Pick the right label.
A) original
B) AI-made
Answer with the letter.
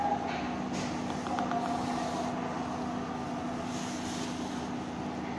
A